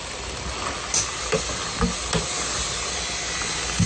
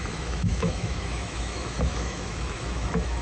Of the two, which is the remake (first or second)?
second